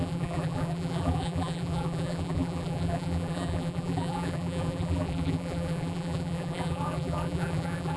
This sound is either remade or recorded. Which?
remade